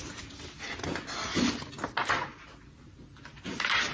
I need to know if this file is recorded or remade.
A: recorded